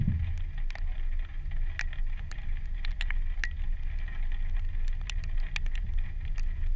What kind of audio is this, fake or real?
real